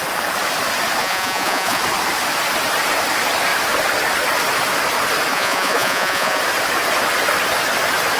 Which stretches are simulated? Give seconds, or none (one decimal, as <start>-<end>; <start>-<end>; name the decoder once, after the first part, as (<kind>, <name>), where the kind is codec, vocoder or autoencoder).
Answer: 1.0-1.8 (vocoder, Vocos); 5.3-6.4